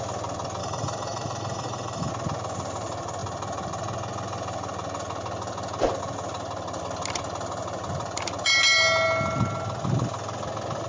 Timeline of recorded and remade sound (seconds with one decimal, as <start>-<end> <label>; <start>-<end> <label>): 0.0-0.6 recorded; 0.6-2.1 remade; 2.1-10.9 recorded